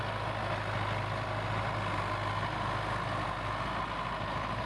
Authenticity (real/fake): real